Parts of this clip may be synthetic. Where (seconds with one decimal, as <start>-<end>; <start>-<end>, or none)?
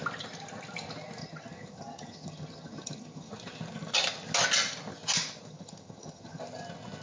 1.2-3.3; 5.5-6.4